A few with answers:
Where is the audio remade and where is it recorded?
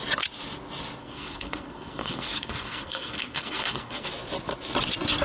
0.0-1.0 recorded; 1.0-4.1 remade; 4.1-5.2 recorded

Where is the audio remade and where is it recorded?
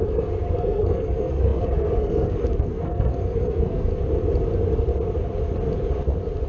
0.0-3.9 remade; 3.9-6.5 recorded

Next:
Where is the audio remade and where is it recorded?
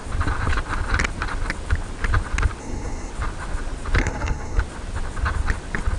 0.0-2.6 recorded; 2.6-3.1 remade; 3.1-4.0 recorded; 4.0-4.6 remade; 4.6-6.0 recorded